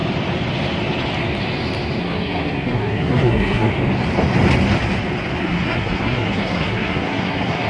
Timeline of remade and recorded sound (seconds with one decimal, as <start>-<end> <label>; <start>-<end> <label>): 0.0-2.0 recorded; 2.0-3.7 remade; 3.7-5.4 recorded; 5.4-7.7 remade